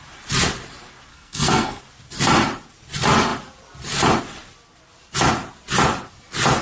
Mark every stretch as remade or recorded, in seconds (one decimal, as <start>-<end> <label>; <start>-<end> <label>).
0.0-1.1 recorded; 1.1-1.8 remade; 1.8-6.6 recorded